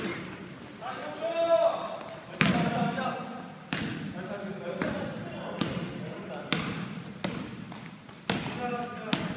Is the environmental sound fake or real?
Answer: real